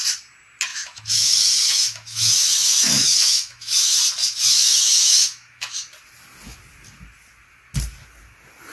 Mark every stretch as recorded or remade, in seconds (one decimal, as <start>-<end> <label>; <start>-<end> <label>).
0.0-0.7 recorded; 0.7-4.0 remade; 4.0-4.5 recorded; 4.5-5.8 remade; 5.8-8.7 recorded

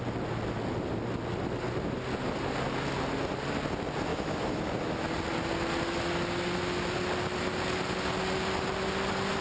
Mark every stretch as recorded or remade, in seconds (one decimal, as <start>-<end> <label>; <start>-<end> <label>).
0.0-4.1 recorded; 4.1-5.1 remade; 5.1-9.4 recorded

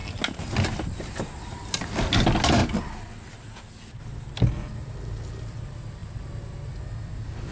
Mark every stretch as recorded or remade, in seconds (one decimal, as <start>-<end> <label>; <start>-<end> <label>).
0.0-7.5 recorded

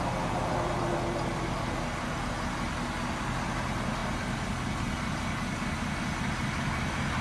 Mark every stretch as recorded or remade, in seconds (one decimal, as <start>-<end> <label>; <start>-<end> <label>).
0.0-7.2 recorded